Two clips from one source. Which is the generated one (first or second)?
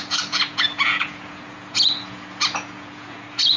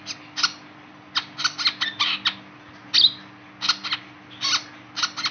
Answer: first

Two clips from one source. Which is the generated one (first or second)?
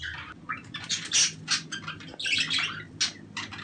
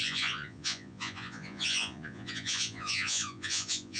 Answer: second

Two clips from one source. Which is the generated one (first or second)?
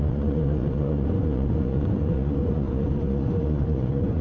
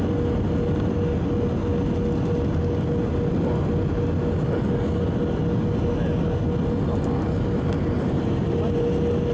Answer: first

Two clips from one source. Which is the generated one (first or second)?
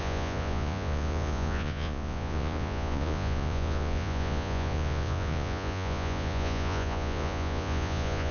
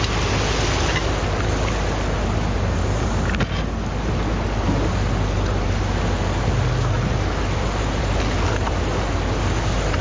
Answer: first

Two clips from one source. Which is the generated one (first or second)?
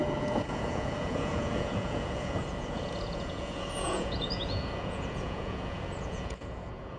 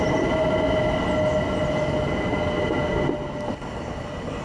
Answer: first